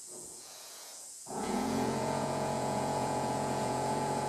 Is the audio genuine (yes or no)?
no